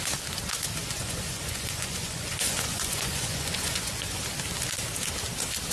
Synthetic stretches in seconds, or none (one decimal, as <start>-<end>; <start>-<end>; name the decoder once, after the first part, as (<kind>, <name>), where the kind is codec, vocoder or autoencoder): 0.8-4.2 (vocoder, Vocos)